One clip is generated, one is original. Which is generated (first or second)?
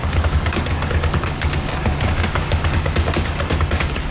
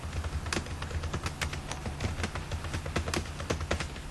first